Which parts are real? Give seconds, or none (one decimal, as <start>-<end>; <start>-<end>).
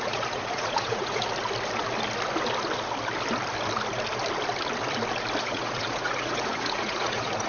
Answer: 1.2-5.4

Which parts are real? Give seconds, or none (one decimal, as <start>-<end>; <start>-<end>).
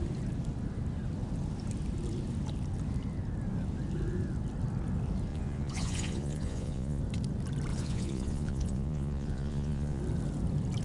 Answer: 0.0-5.3; 7.0-7.7; 10.0-10.8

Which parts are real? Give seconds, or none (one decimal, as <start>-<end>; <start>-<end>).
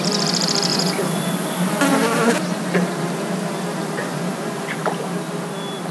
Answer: 0.0-0.7; 1.2-4.0; 4.8-5.9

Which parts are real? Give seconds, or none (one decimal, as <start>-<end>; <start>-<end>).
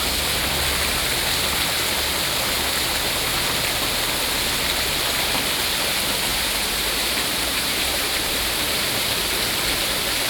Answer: 0.0-6.3; 9.1-10.3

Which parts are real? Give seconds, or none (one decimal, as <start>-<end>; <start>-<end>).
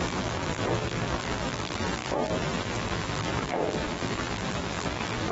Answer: none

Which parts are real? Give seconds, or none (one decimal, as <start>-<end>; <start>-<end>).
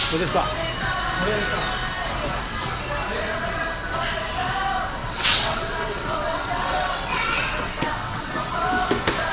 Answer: 0.0-5.0; 8.3-9.3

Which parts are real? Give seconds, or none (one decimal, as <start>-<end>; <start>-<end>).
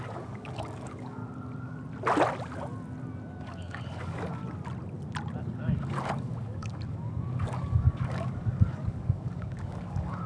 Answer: 1.2-3.4; 4.4-5.4